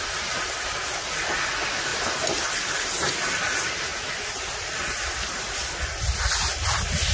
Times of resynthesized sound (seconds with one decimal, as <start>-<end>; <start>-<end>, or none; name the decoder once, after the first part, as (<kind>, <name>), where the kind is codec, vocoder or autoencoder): 1.9-2.9 (vocoder, BigVGAN v2); 3.9-5.7